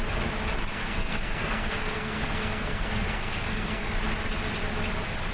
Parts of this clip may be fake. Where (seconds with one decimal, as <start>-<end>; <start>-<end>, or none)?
0.7-3.9

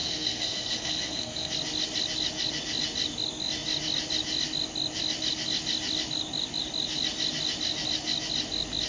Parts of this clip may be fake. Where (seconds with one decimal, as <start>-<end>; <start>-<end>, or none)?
0.0-1.5

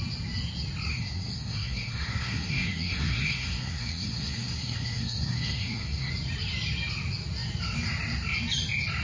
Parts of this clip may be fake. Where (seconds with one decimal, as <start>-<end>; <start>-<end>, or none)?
0.9-6.1

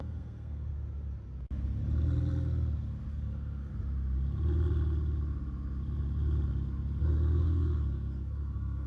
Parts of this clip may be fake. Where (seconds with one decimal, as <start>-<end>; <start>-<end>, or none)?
0.0-0.7; 3.1-3.7; 7.0-8.9

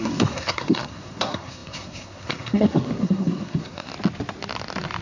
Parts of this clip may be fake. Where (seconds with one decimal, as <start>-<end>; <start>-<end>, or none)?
0.0-3.9